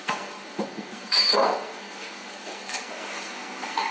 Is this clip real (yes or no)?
no